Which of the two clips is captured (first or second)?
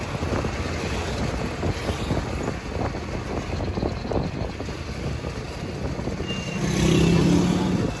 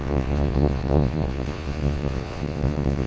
first